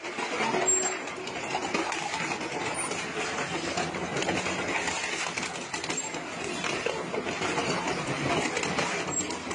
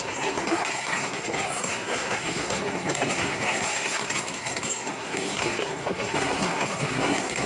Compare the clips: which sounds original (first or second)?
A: first